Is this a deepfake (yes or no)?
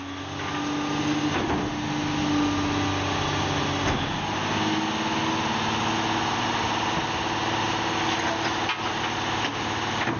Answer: no